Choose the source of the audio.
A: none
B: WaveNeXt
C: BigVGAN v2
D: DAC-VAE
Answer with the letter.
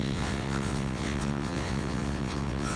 B